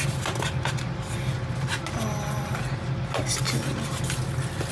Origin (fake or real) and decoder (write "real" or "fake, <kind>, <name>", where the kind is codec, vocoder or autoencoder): real